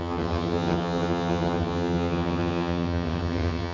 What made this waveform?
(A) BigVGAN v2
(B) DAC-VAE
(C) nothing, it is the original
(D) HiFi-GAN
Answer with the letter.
D